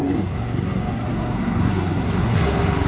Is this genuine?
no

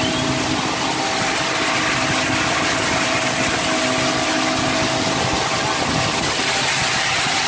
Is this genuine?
yes